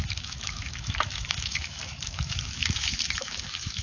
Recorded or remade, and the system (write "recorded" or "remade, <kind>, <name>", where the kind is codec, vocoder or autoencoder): remade, autoencoder, DAC-VAE